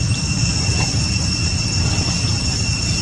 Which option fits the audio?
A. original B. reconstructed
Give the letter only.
A